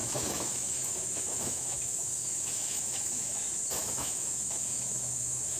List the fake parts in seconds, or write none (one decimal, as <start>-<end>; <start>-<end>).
0.0-3.4; 3.8-5.6